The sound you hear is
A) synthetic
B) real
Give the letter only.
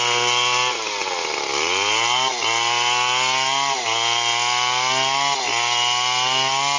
B